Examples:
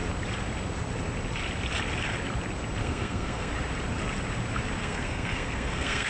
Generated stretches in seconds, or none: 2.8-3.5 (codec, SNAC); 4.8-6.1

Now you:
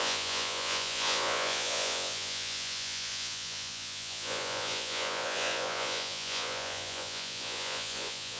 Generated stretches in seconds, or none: 0.0-8.4 (vocoder, Vocos)

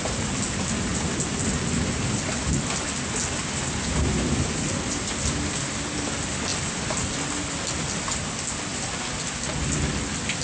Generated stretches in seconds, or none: none